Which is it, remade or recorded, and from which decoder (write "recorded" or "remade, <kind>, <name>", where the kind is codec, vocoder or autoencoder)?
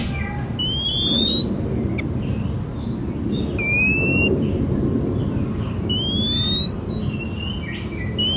recorded